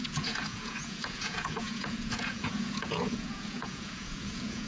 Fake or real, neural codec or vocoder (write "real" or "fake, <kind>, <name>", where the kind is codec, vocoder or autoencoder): fake, vocoder, Vocos